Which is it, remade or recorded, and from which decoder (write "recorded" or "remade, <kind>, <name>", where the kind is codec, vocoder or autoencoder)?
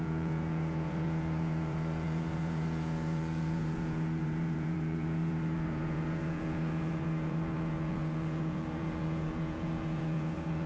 remade, vocoder, Vocos